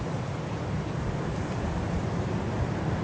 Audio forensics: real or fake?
real